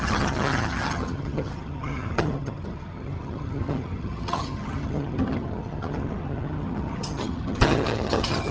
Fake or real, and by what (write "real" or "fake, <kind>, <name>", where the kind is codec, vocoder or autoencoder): fake, vocoder, HiFi-GAN